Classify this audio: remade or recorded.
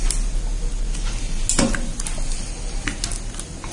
recorded